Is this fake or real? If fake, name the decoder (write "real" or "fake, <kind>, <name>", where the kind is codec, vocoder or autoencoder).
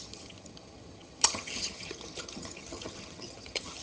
fake, vocoder, HiFi-GAN